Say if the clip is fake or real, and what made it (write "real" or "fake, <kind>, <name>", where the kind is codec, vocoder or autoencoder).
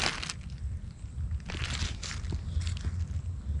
real